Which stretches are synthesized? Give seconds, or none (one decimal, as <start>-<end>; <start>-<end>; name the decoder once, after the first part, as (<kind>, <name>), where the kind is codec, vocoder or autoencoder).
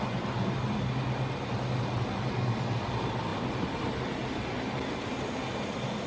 none